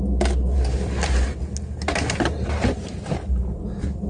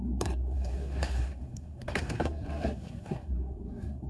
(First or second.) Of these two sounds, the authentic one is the first